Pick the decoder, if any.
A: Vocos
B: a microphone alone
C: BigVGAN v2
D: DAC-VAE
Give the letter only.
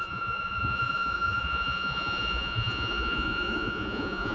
A